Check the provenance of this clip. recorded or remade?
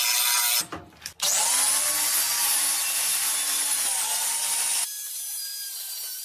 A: recorded